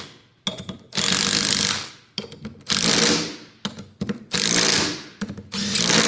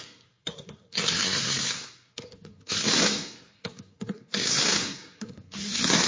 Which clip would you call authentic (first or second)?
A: first